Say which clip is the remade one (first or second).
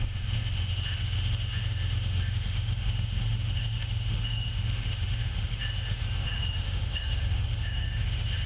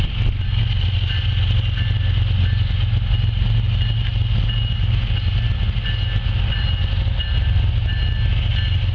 first